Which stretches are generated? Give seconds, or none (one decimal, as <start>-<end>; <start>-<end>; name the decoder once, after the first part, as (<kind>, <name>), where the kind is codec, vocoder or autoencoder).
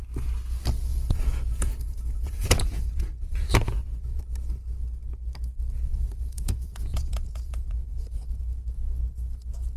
0.9-4.2 (vocoder, Vocos); 5.9-8.2